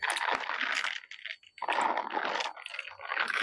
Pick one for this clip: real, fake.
real